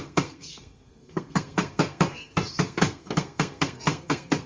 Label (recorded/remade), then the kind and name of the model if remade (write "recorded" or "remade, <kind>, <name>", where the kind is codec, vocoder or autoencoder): remade, codec, SNAC